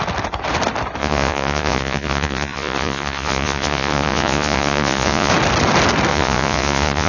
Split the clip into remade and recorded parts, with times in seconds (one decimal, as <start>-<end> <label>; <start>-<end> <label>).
0.0-1.0 recorded; 1.0-5.3 remade; 5.3-6.1 recorded; 6.1-7.1 remade